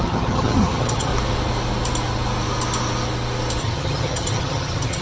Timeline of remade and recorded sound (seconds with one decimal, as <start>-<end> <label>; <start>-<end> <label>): 0.0-1.1 remade; 1.1-3.6 recorded; 3.6-5.0 remade

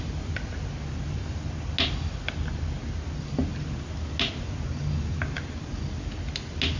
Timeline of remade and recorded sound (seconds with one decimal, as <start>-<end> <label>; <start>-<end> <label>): 0.0-6.8 recorded

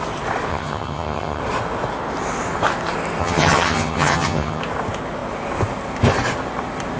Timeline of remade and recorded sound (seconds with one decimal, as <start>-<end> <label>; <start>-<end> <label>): 0.0-0.5 recorded; 0.5-1.4 remade; 1.4-3.2 recorded; 3.2-4.6 remade; 4.6-7.0 recorded

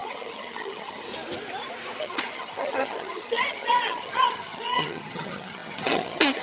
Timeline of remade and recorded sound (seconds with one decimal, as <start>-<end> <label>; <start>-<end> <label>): 0.0-1.1 remade; 1.1-2.0 recorded; 2.0-6.4 remade

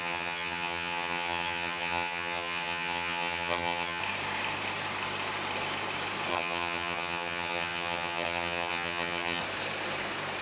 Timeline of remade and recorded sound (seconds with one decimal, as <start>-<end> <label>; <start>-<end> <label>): 0.0-4.0 remade; 4.0-6.3 recorded; 6.3-9.4 remade; 9.4-10.4 recorded